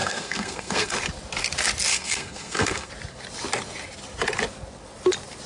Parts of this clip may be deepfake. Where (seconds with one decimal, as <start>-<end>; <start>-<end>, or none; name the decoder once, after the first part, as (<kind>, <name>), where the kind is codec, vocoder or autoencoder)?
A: 0.0-0.9 (codec, SNAC); 1.9-2.9